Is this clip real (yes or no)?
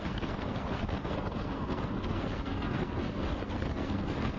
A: no